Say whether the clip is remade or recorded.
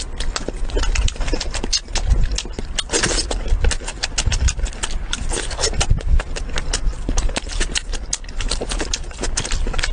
recorded